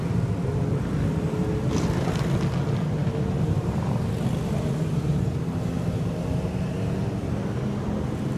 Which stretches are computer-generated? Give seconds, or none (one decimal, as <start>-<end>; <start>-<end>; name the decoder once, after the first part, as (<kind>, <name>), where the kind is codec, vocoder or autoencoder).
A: none